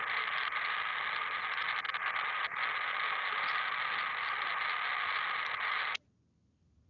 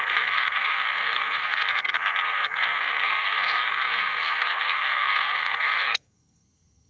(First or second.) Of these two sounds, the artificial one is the second